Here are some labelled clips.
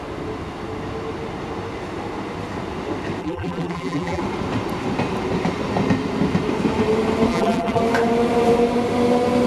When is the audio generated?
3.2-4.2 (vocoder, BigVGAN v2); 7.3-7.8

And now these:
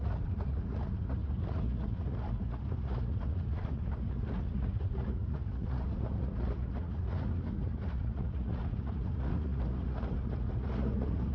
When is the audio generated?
0.0-11.3 (vocoder, Vocos)

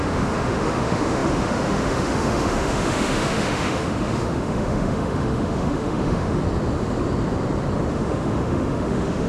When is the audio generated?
0.0-6.4 (autoencoder, DAC-VAE); 7.9-9.3